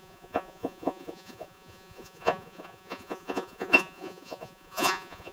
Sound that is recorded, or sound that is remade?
remade